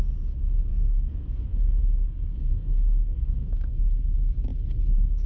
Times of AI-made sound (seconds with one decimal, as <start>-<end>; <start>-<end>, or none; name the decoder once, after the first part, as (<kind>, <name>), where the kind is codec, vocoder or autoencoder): 0.7-1.8 (codec, SNAC); 2.3-3.8